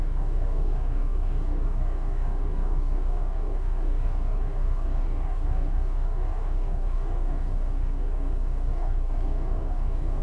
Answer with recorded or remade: remade